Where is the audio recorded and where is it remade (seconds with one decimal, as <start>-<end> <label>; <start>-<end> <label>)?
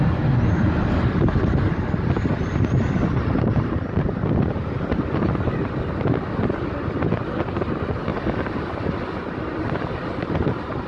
0.0-10.9 recorded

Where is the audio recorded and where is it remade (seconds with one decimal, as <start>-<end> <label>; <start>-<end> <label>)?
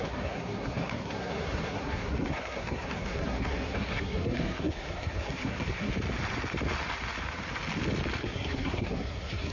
0.0-5.9 remade; 5.9-8.2 recorded; 8.2-9.5 remade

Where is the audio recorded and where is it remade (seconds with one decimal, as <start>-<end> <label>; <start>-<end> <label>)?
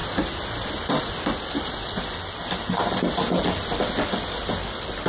0.0-2.2 recorded; 2.2-5.1 remade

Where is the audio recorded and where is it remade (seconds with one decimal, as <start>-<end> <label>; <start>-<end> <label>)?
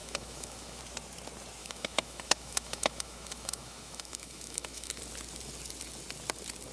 0.0-0.8 remade; 0.8-1.6 recorded; 1.6-5.0 remade; 5.0-6.7 recorded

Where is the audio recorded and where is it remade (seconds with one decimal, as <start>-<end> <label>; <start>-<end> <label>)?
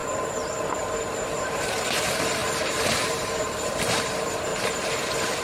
0.0-1.2 recorded; 1.2-5.4 remade